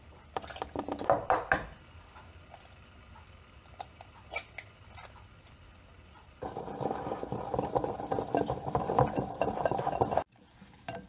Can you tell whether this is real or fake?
fake